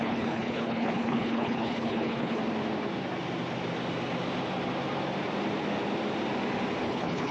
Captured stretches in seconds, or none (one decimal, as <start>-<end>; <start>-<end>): 2.4-6.8